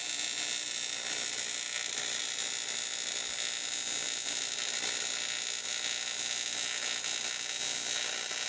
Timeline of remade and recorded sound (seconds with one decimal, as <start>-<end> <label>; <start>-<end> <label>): 0.0-8.5 recorded